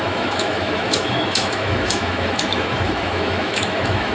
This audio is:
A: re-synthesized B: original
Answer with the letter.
A